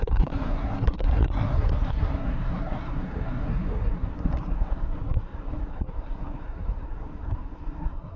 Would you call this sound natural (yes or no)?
no